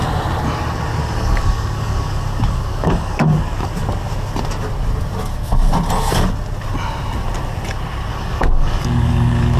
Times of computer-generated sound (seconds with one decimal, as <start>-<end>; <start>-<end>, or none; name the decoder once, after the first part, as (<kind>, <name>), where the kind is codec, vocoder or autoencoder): 1.0-3.7 (codec, DAC); 8.1-9.6